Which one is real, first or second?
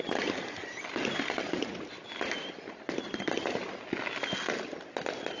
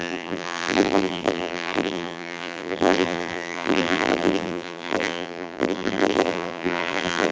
first